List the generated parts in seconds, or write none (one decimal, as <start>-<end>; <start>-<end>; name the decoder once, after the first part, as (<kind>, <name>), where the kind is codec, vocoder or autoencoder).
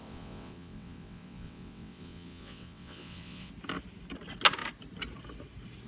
0.0-3.5 (vocoder, WaveNeXt)